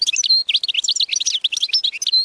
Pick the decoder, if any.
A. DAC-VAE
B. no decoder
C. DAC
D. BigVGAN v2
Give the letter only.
B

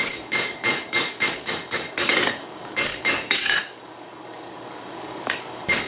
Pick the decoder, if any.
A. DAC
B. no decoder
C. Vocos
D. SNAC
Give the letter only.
A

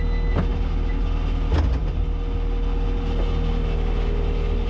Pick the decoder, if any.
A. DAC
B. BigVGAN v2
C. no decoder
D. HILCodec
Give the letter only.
C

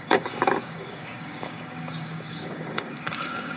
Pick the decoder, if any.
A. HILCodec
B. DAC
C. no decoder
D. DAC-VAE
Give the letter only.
B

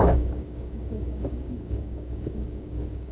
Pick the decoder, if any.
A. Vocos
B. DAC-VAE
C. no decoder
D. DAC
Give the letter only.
D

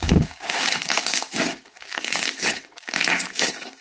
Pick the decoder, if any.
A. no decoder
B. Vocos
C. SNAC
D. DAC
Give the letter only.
D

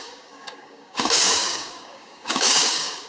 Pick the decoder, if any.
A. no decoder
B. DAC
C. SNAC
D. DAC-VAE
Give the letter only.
B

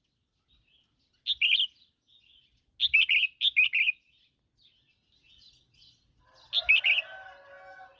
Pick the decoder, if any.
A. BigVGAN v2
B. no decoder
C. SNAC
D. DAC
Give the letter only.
B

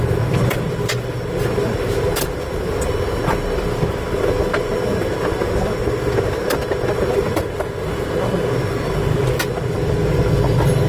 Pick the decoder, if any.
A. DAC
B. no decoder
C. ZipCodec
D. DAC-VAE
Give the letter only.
B